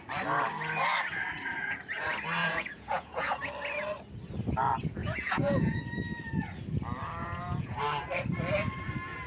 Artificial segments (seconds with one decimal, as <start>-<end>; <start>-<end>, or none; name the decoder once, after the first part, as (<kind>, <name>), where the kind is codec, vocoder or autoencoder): 2.4-3.5 (vocoder, Vocos); 5.0-5.8; 7.2-7.8